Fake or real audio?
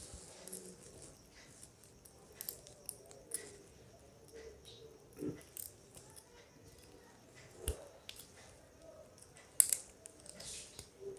real